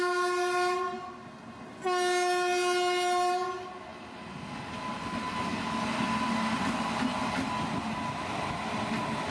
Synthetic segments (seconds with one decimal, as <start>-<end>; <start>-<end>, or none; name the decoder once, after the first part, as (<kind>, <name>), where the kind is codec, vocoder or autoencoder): none